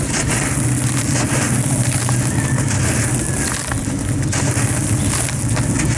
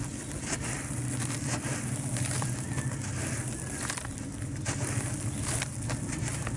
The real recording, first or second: first